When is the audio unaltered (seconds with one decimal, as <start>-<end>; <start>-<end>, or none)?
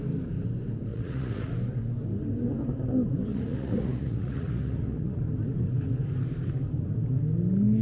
0.0-0.9; 1.5-3.3; 5.2-7.8